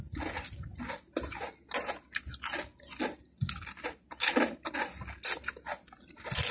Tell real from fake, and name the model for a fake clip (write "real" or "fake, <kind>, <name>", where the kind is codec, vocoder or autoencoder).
real